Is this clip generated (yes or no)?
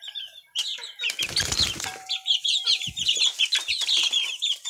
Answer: yes